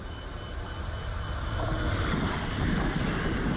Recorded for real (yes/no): yes